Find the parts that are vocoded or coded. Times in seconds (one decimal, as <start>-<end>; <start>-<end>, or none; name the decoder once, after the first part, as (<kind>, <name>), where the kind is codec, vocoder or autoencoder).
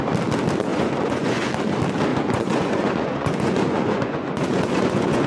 0.7-1.5 (vocoder, Vocos); 2.1-5.3